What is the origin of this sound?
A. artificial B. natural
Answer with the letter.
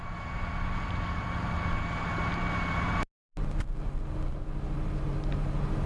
B